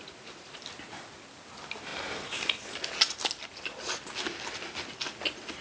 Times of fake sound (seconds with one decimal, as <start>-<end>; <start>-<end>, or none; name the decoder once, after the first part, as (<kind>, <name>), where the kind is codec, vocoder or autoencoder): none